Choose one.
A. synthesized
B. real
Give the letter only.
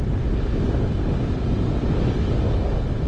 B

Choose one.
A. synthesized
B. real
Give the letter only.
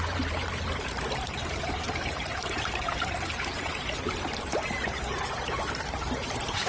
A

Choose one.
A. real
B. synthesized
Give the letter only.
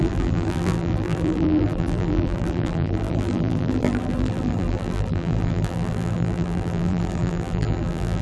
B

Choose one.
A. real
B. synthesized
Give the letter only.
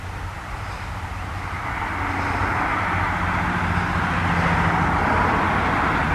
A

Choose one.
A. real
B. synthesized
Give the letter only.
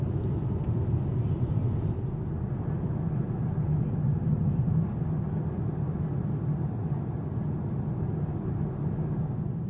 A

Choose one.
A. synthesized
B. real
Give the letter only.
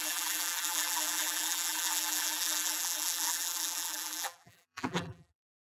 A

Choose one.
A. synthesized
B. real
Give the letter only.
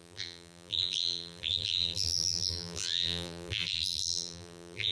A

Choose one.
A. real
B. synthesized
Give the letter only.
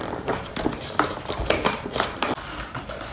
B